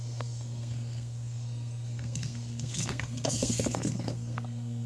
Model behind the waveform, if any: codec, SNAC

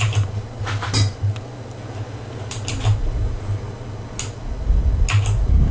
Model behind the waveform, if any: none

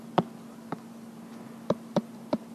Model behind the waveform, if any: none